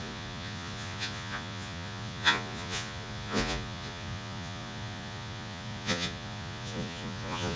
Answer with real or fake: fake